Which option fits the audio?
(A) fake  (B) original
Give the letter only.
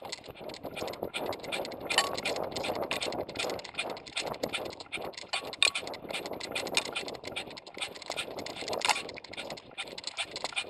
B